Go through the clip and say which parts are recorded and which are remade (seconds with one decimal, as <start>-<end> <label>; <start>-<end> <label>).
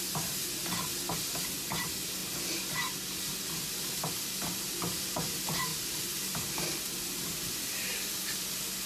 0.0-5.7 recorded; 5.7-7.7 remade; 7.7-8.9 recorded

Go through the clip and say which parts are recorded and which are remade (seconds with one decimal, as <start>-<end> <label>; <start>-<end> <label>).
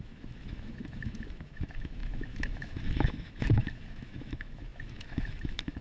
0.0-5.8 remade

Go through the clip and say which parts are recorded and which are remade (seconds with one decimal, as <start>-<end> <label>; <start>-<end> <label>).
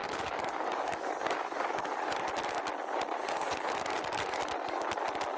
0.0-2.3 remade; 2.3-3.2 recorded; 3.2-4.3 remade; 4.3-5.4 recorded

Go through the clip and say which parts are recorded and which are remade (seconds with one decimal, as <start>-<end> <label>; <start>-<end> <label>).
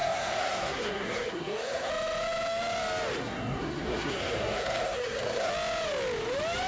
0.0-1.9 remade; 1.9-3.2 recorded; 3.2-5.5 remade; 5.5-6.7 recorded